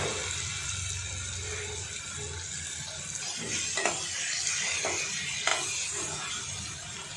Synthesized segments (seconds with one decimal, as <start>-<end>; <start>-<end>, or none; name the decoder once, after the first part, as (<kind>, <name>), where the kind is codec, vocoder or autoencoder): 5.5-6.3 (vocoder, Vocos)